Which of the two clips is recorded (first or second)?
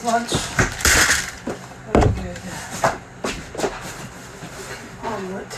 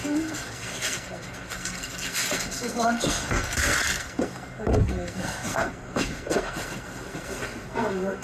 first